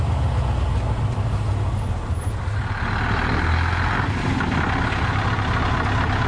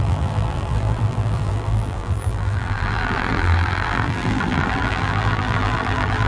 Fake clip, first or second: second